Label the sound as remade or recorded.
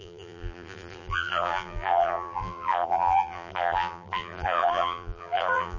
remade